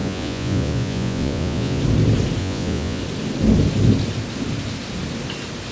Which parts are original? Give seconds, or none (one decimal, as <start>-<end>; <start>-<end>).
1.8-2.4; 3.0-5.7